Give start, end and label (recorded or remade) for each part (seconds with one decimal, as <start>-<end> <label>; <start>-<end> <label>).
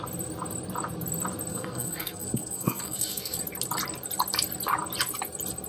0.0-1.5 recorded; 1.5-3.4 remade; 3.4-5.7 recorded